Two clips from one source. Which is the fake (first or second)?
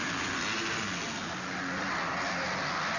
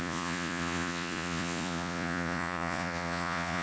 second